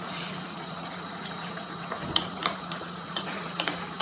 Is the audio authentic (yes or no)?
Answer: no